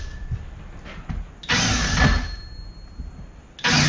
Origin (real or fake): real